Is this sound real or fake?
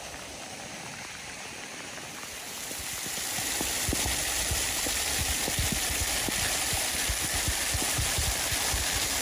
real